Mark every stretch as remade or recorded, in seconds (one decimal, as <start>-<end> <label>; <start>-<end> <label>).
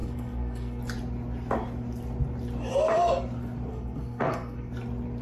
0.0-0.8 remade; 0.8-3.7 recorded; 3.7-4.7 remade; 4.7-5.2 recorded